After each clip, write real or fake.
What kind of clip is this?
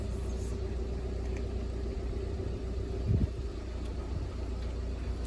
real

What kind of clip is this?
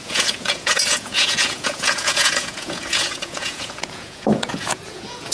fake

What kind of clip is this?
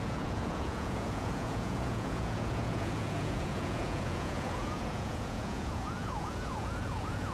fake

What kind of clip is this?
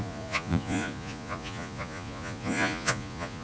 fake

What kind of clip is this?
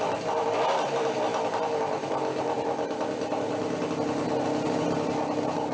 real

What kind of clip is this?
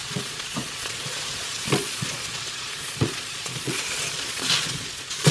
fake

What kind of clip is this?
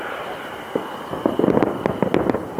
real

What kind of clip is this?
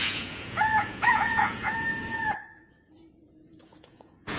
fake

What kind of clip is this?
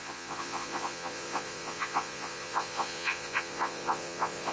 fake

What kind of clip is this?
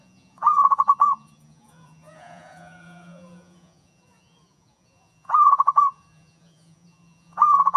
fake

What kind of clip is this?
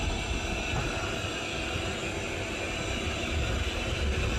real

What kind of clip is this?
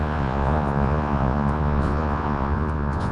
fake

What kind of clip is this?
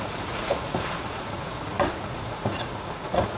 fake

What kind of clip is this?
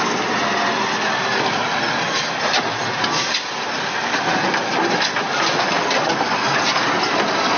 real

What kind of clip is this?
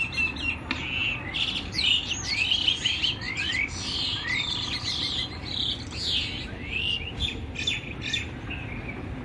real